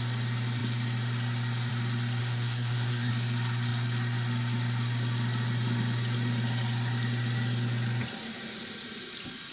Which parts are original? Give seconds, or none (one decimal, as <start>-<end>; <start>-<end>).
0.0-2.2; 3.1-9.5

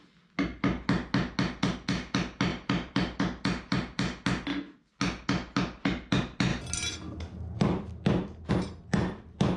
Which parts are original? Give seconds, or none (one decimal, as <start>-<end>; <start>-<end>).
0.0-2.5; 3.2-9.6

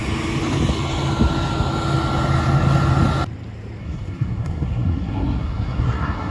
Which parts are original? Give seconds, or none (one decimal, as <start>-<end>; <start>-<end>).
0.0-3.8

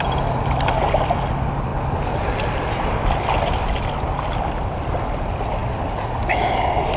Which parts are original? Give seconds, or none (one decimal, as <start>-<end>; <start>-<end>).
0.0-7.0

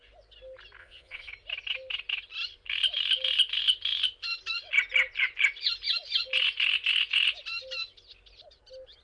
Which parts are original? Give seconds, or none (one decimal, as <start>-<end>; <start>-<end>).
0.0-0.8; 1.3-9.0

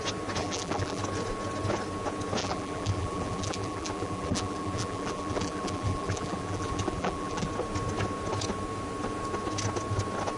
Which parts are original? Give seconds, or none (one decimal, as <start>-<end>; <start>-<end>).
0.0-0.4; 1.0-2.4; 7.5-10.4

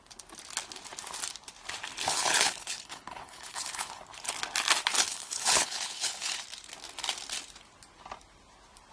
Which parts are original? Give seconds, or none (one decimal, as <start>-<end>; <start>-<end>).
0.0-2.1; 4.0-5.1; 6.4-8.9

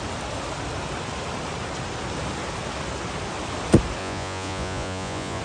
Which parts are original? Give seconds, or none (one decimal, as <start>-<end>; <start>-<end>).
0.0-4.0